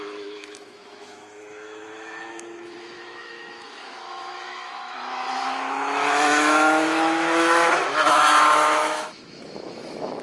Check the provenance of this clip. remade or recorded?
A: remade